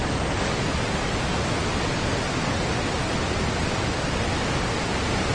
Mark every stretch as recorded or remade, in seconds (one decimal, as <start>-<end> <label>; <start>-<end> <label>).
0.0-5.3 recorded